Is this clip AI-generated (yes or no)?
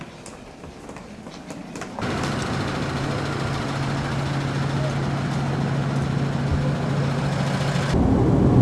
no